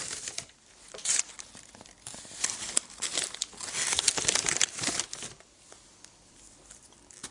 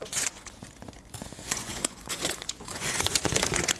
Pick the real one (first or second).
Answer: first